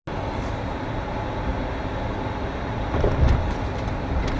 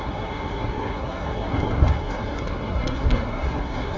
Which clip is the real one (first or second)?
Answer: first